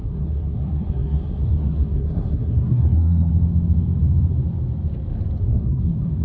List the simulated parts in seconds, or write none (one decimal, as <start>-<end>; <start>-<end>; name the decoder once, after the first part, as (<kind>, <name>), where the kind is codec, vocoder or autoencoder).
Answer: 0.0-3.3 (codec, SNAC); 5.4-6.2